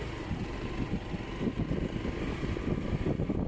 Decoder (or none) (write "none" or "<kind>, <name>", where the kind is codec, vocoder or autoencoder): none